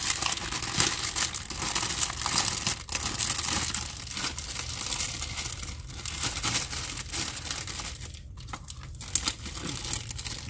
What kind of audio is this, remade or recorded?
recorded